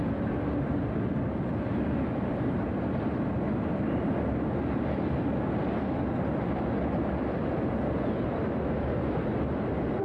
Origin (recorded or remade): recorded